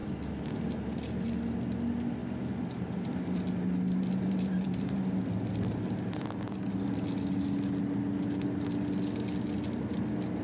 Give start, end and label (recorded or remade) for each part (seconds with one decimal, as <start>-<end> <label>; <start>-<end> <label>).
0.0-10.4 recorded